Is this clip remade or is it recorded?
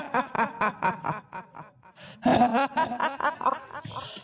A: recorded